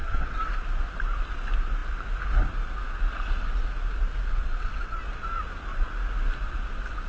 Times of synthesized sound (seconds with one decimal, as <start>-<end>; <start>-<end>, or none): 0.0-0.5; 4.3-5.0